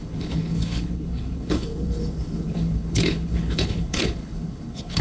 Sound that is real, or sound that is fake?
fake